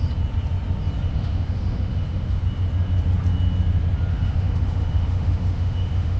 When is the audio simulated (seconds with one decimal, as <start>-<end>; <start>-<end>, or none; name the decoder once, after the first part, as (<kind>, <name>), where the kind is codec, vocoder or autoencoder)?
1.1-2.4 (autoencoder, DAC-VAE); 4.1-6.2